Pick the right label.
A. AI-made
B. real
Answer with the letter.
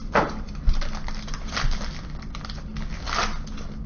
B